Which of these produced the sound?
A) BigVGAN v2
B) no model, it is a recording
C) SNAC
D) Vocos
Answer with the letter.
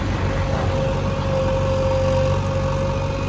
B